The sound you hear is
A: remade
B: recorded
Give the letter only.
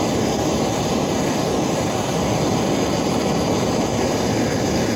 B